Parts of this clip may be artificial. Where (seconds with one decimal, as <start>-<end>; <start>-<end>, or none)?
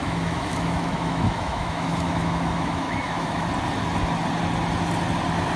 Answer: 0.0-3.4